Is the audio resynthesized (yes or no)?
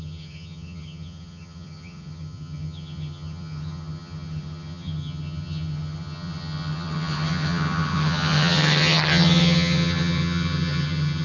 yes